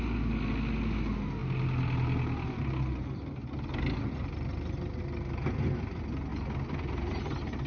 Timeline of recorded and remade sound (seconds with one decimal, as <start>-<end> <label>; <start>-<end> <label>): 0.0-7.7 recorded